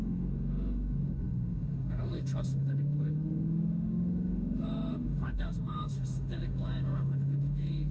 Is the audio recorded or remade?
remade